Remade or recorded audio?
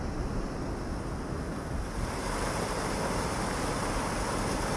recorded